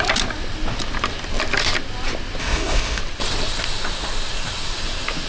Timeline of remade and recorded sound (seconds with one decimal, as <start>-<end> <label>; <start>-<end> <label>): 0.0-2.4 recorded; 2.4-3.0 remade; 3.0-5.3 recorded